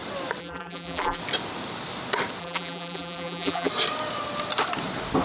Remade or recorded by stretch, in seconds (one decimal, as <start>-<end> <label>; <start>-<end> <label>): 0.0-0.4 recorded; 0.4-1.2 remade; 1.2-2.4 recorded; 2.4-3.7 remade; 3.7-5.2 recorded